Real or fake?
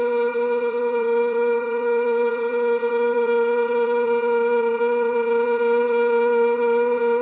fake